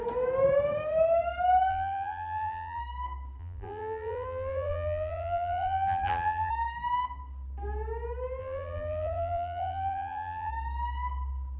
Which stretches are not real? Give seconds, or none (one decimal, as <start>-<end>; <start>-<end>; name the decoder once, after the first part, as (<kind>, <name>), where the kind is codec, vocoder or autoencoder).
1.7-2.8 (vocoder, BigVGAN v2); 3.4-6.5; 8.4-10.5